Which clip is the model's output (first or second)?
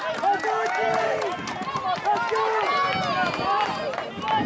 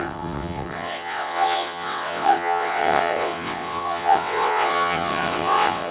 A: second